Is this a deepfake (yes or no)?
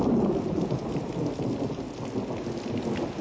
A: no